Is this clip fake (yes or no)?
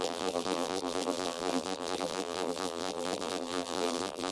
yes